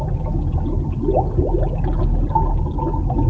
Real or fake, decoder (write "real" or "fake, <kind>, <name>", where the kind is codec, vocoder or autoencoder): real